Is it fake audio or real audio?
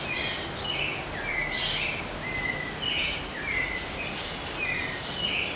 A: real